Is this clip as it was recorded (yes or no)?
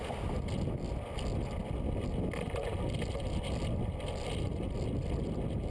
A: yes